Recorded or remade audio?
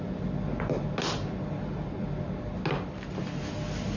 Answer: recorded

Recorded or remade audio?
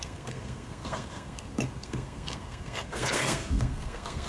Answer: remade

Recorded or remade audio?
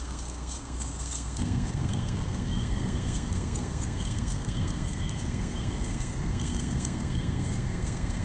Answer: remade